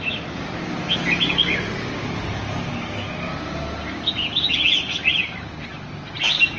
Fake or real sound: real